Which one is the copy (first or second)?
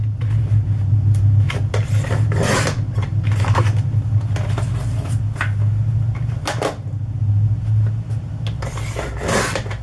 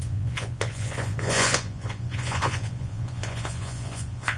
second